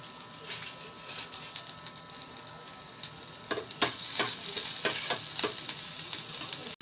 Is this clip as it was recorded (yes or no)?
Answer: yes